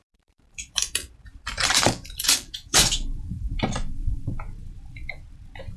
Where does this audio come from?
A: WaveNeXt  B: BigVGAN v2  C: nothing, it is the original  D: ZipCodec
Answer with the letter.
B